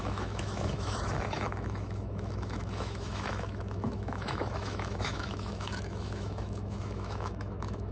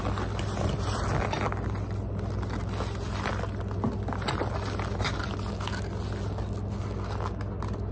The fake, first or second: first